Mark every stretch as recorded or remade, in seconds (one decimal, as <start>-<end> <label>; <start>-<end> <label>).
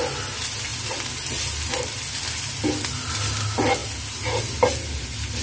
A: 0.0-5.4 recorded